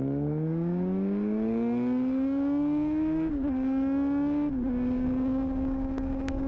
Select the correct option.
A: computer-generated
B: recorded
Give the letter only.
A